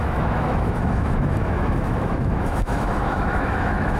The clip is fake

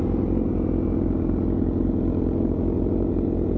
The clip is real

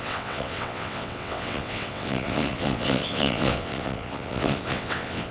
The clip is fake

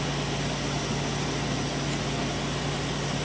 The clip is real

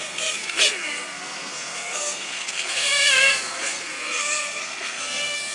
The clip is fake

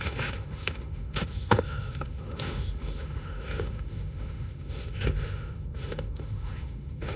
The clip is fake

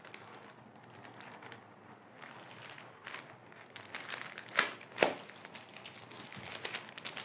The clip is real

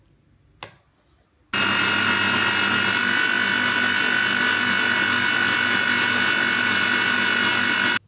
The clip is real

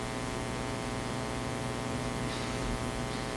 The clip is real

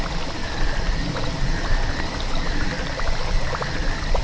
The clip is real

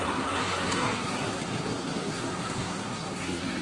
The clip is fake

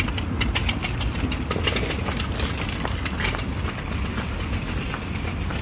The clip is real